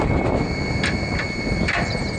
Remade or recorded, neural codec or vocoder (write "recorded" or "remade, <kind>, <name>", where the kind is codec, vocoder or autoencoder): recorded